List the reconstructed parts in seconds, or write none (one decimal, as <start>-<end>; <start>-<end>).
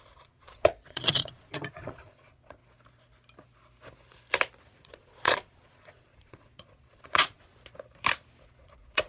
0.0-2.6; 4.6-7.5; 8.4-9.1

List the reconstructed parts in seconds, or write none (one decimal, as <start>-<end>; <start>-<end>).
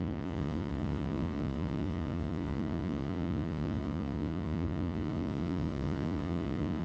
0.0-6.8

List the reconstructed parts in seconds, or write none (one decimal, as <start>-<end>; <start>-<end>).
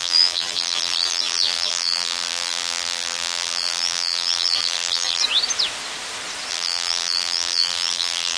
0.0-5.2; 6.5-8.4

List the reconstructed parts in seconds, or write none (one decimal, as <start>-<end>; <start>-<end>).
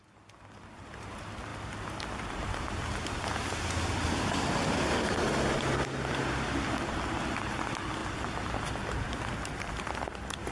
none